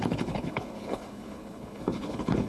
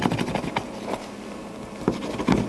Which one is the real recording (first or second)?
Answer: second